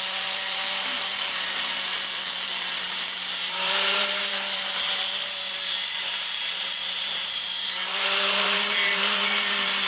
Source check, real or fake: fake